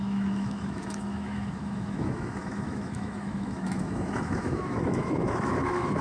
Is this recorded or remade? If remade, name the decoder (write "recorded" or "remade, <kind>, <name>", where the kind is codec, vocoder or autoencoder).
remade, autoencoder, DAC-VAE